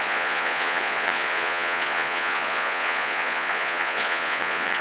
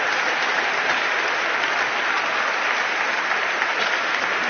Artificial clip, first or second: first